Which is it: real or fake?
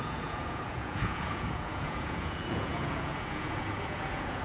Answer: fake